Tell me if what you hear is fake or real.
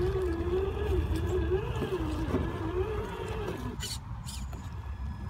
real